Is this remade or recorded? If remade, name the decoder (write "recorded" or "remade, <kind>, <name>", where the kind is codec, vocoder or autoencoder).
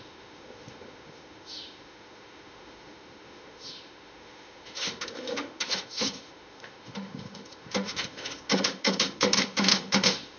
remade, autoencoder, DAC-VAE